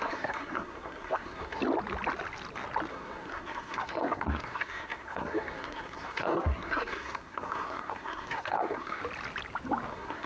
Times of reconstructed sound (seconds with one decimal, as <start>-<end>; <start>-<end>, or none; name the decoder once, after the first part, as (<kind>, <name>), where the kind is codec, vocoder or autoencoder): 0.0-1.6 (codec, SNAC); 2.9-9.0; 9.9-10.3